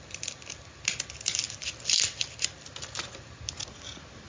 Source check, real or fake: real